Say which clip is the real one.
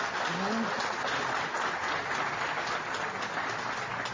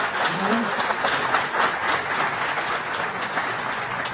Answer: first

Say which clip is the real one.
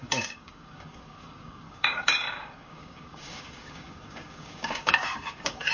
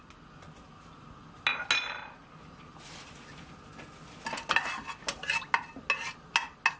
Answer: second